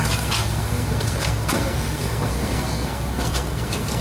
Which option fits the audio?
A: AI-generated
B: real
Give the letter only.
A